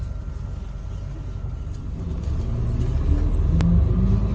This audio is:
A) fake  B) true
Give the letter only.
B